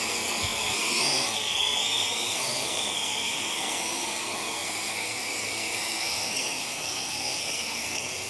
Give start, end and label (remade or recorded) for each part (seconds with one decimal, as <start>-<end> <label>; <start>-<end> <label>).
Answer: 0.0-8.3 remade